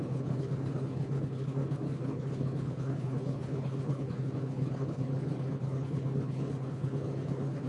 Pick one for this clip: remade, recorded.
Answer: remade